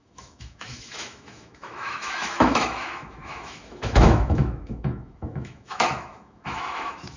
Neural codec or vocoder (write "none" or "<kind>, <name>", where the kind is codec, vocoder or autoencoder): autoencoder, DAC-VAE